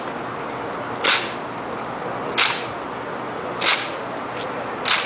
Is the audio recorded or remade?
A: recorded